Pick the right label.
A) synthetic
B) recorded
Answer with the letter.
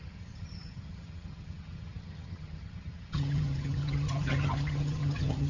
A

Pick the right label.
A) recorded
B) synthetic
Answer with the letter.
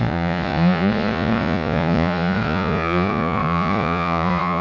B